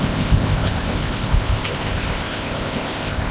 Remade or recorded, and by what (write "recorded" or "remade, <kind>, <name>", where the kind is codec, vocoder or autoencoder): remade, codec, ZipCodec